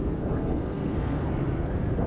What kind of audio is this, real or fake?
fake